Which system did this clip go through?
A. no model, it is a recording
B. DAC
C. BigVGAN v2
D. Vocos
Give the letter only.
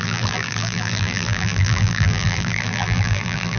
C